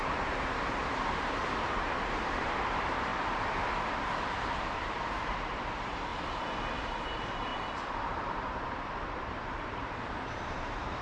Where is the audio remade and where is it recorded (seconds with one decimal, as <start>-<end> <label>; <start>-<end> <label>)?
0.0-3.1 remade; 3.1-4.0 recorded; 4.0-6.1 remade; 6.1-6.8 recorded; 6.8-7.5 remade; 7.5-8.0 recorded; 8.0-11.0 remade